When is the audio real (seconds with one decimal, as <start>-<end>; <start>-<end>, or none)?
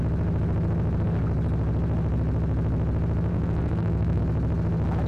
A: 0.0-3.3; 4.2-5.1